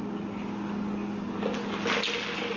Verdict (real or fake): real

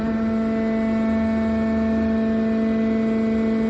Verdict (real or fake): real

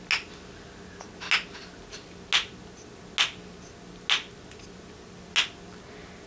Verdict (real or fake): real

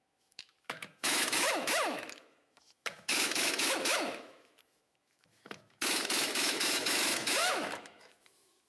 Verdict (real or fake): fake